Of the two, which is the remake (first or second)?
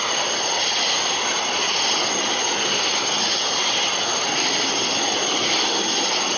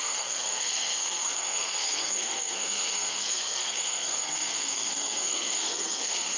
second